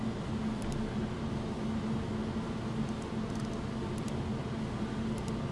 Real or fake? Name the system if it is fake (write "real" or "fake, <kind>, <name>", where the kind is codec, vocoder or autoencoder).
real